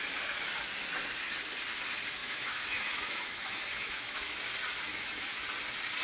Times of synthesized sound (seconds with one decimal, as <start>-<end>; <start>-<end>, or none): 2.2-4.4; 4.9-5.4